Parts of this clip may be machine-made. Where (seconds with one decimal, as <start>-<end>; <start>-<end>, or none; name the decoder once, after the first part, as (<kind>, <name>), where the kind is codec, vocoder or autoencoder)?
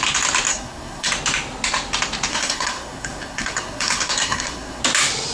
0.5-1.1 (codec, SNAC); 2.3-4.8